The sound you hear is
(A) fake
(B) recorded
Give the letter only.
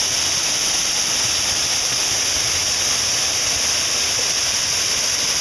B